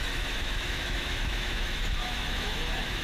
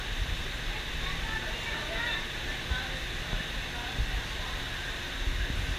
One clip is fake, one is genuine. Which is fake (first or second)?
first